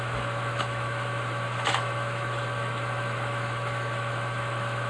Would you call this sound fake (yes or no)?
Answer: yes